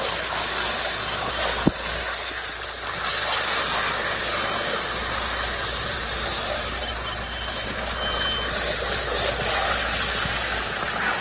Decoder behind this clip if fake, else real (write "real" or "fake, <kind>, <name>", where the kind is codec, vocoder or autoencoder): real